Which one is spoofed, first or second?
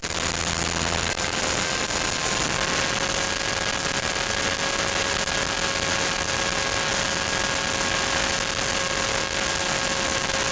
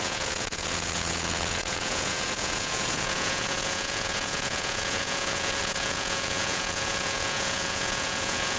second